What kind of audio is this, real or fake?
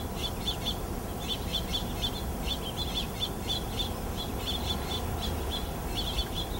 real